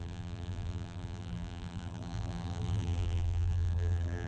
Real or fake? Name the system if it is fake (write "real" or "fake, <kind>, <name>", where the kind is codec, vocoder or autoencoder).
fake, vocoder, BigVGAN v2